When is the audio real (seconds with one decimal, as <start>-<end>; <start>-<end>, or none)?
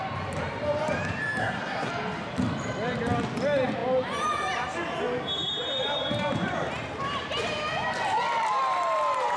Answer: 0.0-1.4; 1.9-9.4